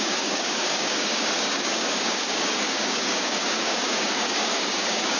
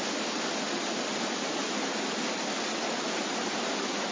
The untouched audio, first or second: second